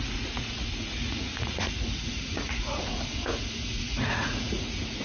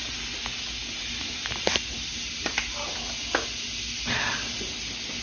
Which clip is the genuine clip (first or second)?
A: second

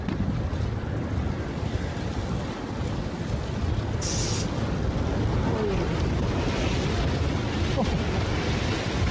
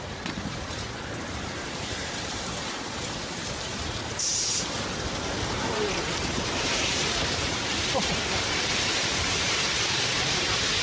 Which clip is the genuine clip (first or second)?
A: first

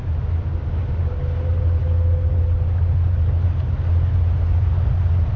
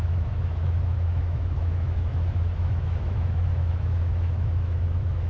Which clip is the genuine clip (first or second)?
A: first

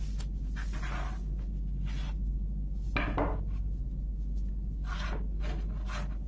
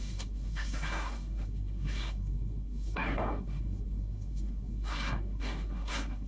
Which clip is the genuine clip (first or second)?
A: first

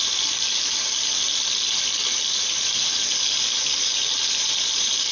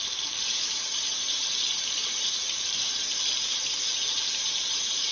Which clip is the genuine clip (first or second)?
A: first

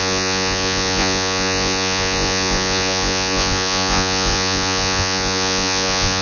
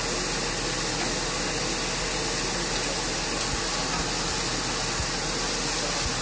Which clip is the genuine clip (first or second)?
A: second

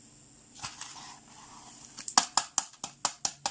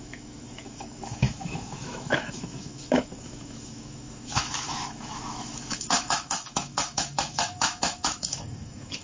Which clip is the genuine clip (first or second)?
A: first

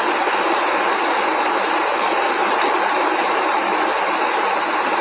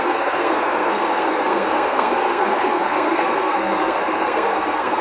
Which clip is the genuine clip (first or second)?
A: first